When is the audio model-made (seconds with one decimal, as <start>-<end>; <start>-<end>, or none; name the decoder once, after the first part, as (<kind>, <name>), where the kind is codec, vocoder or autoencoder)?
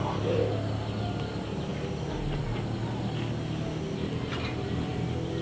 none